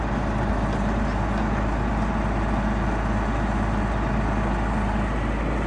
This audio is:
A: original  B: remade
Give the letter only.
A